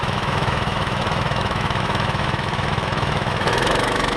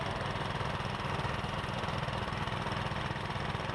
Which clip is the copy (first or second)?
first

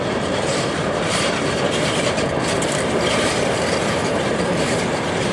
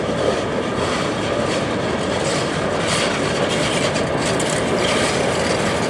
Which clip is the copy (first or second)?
first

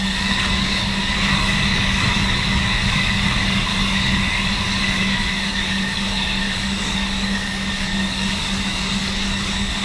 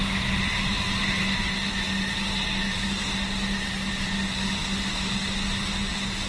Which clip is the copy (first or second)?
first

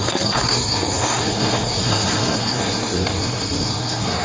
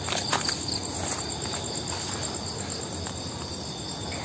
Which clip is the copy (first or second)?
first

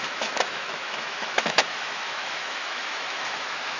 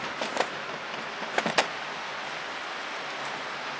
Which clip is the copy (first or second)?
first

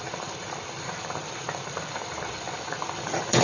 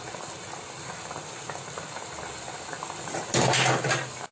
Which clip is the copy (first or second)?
first